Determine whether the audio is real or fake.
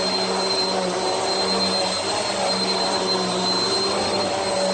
real